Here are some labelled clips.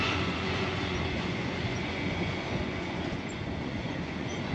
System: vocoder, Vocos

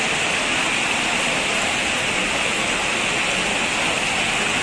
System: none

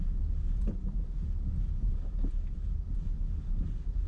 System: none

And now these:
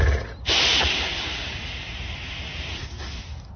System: none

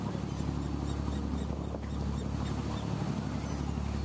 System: none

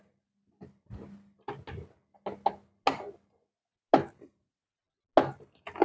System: none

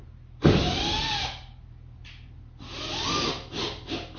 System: none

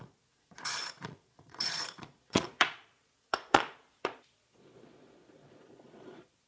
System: vocoder, Vocos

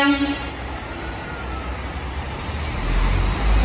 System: none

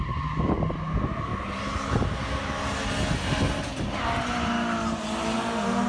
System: none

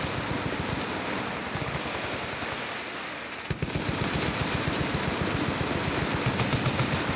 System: none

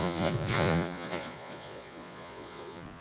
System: vocoder, Vocos